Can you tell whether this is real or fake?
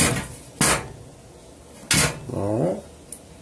real